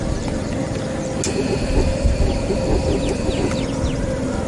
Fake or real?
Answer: real